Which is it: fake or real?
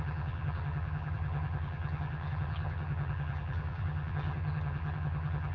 fake